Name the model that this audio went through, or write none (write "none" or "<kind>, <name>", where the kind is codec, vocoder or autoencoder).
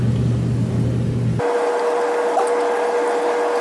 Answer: none